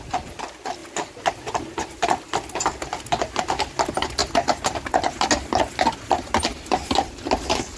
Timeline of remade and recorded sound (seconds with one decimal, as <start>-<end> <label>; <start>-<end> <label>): 0.0-7.8 recorded

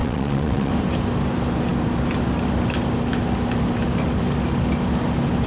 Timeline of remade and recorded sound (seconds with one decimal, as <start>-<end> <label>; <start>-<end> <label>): 0.0-0.7 remade; 0.7-5.5 recorded